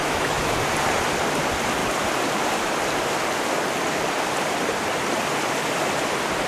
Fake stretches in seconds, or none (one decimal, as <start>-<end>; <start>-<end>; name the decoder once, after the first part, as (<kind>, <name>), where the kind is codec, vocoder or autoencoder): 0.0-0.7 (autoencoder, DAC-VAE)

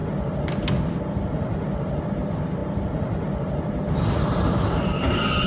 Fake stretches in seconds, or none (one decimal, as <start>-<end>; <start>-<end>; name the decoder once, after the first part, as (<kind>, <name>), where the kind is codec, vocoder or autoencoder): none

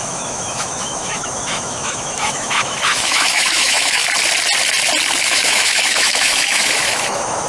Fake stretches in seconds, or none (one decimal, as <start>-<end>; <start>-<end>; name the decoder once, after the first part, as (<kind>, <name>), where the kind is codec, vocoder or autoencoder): 0.0-4.0 (autoencoder, DAC-VAE); 5.3-7.5

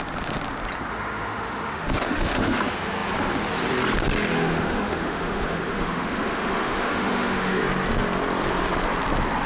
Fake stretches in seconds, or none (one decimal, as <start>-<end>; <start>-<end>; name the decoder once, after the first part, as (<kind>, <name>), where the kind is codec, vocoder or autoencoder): 0.9-2.6 (autoencoder, DAC-VAE); 4.3-7.6

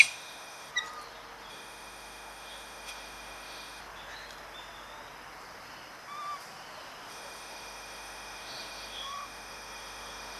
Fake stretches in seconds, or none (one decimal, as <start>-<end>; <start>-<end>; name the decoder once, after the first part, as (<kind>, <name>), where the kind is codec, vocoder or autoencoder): 0.0-0.7 (autoencoder, DAC-VAE); 1.5-3.8; 7.1-10.4

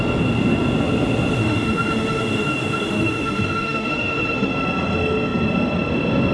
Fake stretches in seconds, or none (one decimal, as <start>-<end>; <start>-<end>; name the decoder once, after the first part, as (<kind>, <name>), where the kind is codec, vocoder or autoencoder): 1.4-4.5 (autoencoder, DAC-VAE)

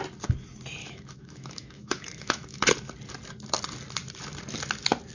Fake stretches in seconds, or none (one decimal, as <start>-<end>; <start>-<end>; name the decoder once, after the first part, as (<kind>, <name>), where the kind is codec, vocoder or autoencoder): 0.8-2.6 (autoencoder, DAC-VAE)

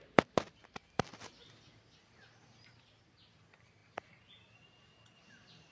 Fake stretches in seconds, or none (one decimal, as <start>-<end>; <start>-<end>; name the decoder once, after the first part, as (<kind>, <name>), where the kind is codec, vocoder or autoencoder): none